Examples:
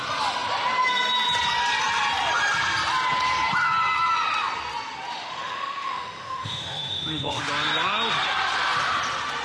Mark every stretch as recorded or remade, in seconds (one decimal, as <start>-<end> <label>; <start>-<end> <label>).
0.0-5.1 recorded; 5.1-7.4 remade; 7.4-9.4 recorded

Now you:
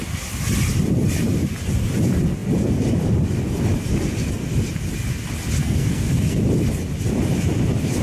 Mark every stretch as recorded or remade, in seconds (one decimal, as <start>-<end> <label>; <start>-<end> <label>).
0.0-5.6 recorded; 5.6-6.4 remade; 6.4-8.0 recorded

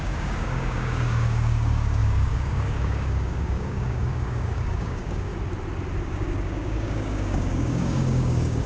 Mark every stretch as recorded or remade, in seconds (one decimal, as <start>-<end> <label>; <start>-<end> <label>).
0.0-5.3 remade; 5.3-6.0 recorded; 6.0-8.7 remade

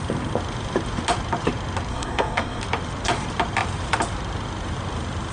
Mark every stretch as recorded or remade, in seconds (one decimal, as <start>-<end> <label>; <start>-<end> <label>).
0.0-1.9 recorded; 1.9-2.6 remade; 2.6-5.3 recorded

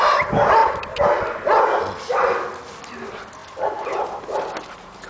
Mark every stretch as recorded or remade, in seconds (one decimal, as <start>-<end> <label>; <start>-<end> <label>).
0.0-0.6 recorded; 0.6-1.1 remade; 1.1-3.4 recorded; 3.4-5.1 remade